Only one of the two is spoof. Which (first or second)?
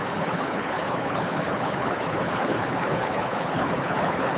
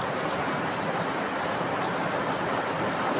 first